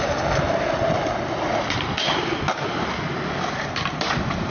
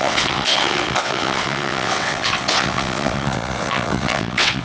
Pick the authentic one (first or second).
first